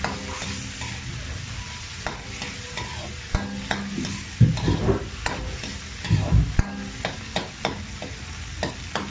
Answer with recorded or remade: recorded